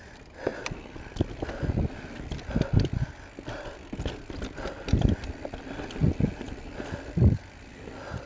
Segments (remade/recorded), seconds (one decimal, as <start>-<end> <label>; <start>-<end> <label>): 0.0-8.3 recorded